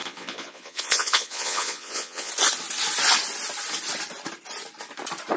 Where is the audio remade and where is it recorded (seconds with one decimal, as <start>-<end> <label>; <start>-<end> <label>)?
0.0-2.3 remade; 2.3-5.4 recorded